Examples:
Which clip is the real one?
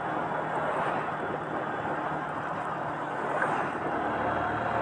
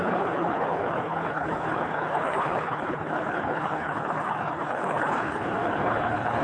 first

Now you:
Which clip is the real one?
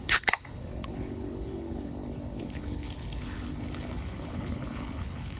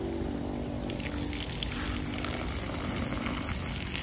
second